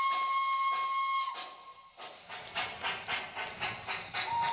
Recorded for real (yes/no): yes